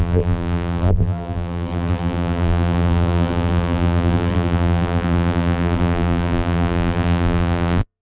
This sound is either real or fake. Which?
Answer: fake